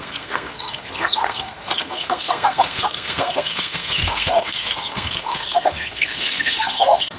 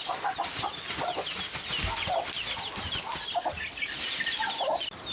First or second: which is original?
second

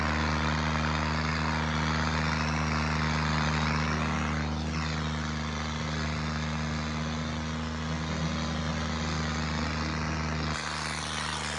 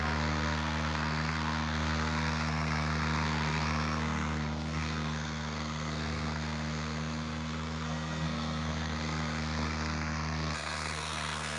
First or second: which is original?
first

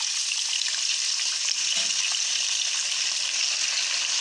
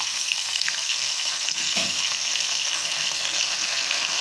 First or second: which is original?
first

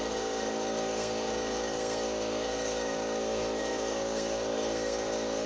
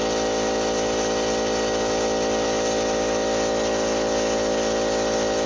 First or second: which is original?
second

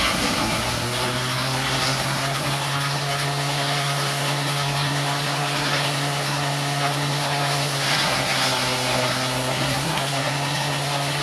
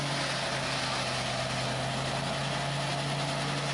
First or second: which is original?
second